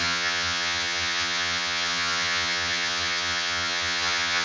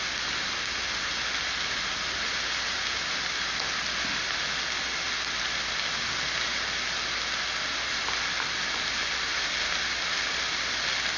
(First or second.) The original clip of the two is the second